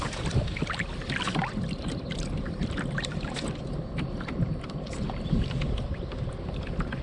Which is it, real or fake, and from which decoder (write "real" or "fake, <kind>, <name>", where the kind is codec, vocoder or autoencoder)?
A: real